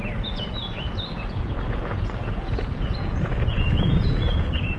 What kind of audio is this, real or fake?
fake